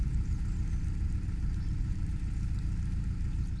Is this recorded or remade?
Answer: remade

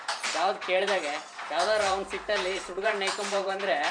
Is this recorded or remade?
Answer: remade